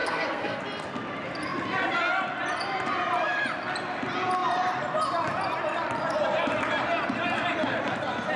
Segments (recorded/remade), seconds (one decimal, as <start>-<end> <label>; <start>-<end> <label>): 0.0-0.6 remade; 0.6-8.4 recorded